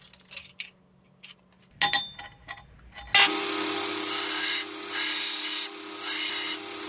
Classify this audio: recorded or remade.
recorded